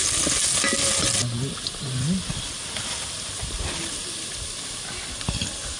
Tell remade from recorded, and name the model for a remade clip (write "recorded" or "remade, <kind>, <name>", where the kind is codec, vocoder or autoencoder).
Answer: recorded